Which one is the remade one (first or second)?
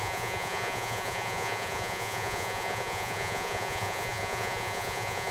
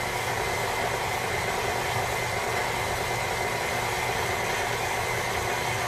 first